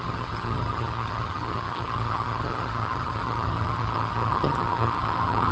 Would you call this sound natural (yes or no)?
no